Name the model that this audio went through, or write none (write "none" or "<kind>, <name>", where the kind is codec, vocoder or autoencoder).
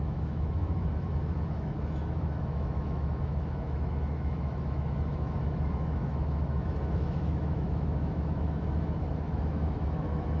autoencoder, DAC-VAE